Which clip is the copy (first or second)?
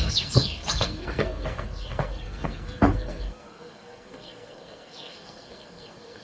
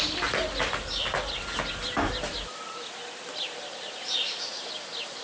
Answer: first